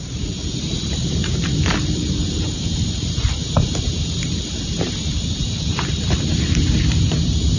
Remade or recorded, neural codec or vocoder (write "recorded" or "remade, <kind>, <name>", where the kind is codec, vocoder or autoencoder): remade, vocoder, BigVGAN v2